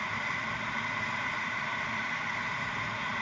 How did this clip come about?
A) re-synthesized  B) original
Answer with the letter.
A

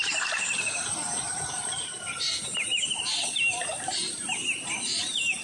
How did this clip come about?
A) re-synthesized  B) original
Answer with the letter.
A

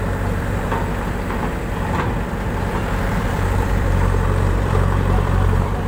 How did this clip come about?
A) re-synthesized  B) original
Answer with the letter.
A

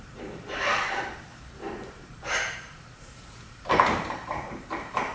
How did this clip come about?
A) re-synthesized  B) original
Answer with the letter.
A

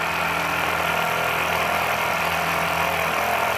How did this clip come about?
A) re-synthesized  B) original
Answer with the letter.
B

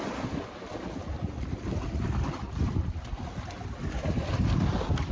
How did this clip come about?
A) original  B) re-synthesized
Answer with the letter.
A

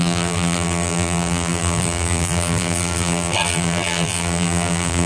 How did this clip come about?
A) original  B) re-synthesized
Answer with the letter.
B